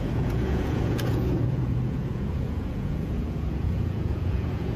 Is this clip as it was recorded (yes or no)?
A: no